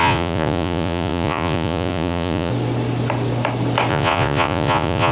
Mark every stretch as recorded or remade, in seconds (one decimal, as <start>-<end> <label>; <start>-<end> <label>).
0.0-2.5 remade; 2.5-3.9 recorded; 3.9-5.1 remade